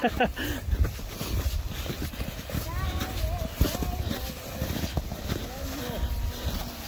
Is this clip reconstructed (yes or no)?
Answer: no